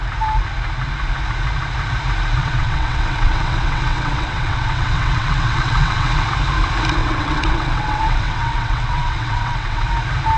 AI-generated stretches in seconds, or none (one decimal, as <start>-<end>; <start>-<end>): 2.4-6.3; 7.0-9.9